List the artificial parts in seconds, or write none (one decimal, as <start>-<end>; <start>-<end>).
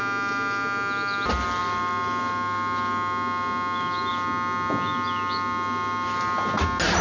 none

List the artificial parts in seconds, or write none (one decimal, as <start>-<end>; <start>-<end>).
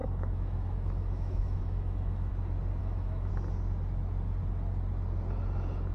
0.0-2.3; 2.8-3.3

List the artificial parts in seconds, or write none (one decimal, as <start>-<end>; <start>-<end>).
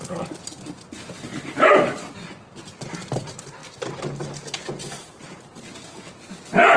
1.3-2.1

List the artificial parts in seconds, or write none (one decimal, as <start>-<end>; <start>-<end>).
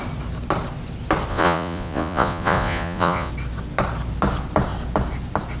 1.3-3.3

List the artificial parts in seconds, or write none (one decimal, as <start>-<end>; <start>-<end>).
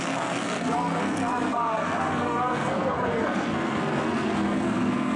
0.0-5.2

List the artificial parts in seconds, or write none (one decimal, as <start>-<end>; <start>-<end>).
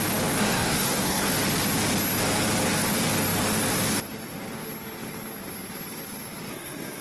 0.4-1.3; 6.5-7.0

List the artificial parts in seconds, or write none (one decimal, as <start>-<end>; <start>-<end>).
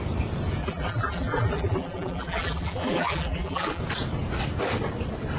0.6-3.8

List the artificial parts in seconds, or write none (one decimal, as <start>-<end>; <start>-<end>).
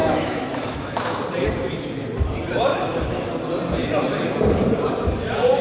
0.0-1.2; 2.7-3.3